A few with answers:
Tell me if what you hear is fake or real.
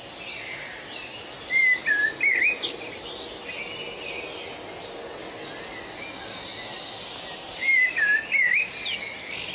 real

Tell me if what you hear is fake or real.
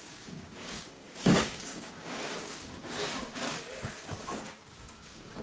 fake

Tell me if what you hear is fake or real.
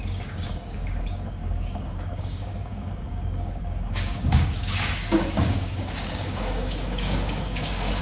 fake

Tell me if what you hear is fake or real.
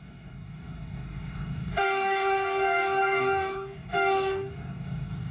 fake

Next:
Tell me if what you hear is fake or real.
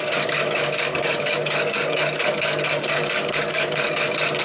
fake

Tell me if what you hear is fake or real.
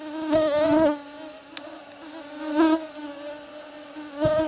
real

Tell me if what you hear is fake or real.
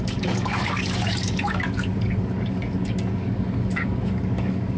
fake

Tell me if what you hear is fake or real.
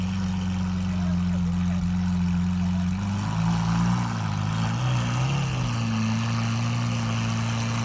real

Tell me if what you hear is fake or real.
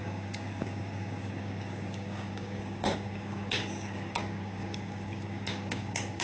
fake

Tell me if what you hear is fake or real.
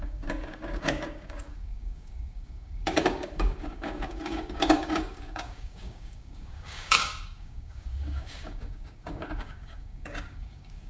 fake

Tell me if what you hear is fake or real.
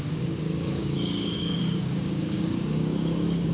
fake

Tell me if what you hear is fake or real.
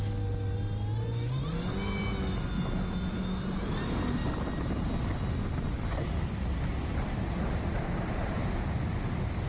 real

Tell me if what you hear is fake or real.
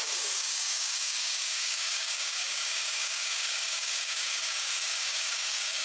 fake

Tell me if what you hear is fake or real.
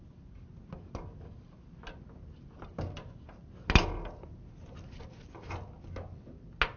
real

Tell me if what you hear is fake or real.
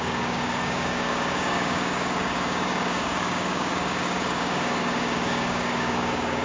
fake